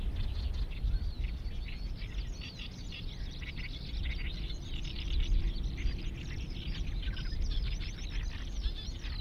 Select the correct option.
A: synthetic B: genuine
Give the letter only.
B